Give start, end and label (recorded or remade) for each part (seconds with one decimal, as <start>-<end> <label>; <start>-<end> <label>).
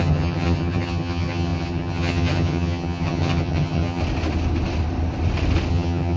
0.0-4.0 remade; 4.0-5.7 recorded; 5.7-6.2 remade